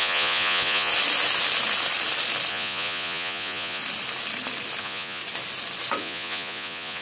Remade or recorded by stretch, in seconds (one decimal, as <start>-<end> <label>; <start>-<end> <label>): 0.0-0.9 remade; 0.9-2.5 recorded; 2.5-3.8 remade; 3.8-4.8 recorded; 4.8-5.2 remade; 5.2-6.0 recorded; 6.0-7.0 remade